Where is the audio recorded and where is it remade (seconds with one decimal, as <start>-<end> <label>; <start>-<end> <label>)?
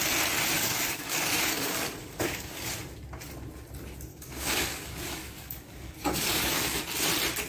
0.0-0.6 recorded; 0.6-2.7 remade; 2.7-4.1 recorded; 4.1-6.8 remade; 6.8-7.5 recorded